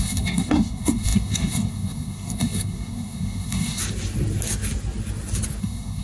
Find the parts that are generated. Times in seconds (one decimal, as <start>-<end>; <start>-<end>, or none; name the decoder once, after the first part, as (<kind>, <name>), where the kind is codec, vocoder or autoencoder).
0.0-3.8 (codec, SNAC); 5.6-6.0